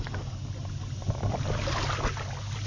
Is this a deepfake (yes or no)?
no